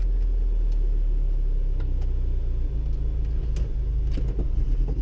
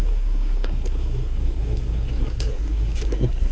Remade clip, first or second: second